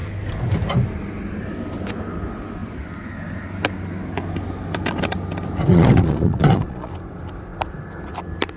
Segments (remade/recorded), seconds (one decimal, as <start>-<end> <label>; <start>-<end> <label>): 0.0-5.7 recorded; 5.7-6.9 remade; 6.9-8.6 recorded